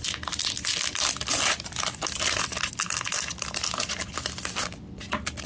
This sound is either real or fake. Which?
real